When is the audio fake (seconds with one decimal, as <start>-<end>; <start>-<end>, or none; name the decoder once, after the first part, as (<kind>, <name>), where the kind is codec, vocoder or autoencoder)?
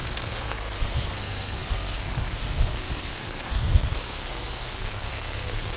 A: 0.0-5.8 (codec, SNAC)